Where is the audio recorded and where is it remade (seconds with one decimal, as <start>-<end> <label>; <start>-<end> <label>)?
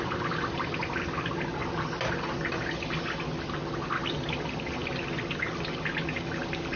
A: 0.0-6.8 recorded